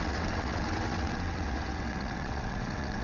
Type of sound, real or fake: fake